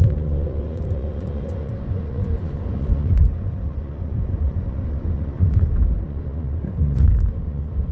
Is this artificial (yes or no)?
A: yes